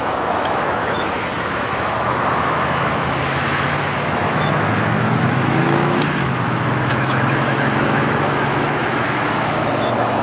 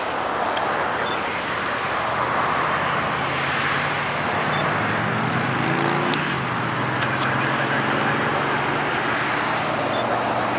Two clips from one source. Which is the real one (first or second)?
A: second